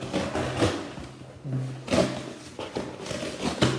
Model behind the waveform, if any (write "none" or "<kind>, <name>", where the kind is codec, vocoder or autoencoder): none